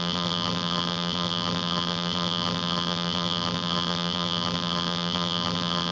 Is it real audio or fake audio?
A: fake